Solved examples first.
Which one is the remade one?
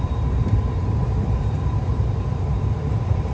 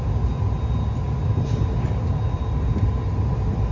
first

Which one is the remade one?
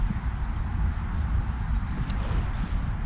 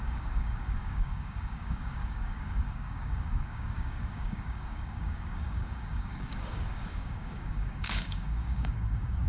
second